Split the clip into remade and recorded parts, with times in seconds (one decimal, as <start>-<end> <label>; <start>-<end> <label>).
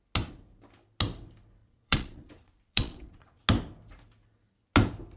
0.0-1.6 recorded; 1.6-3.4 remade; 3.4-5.2 recorded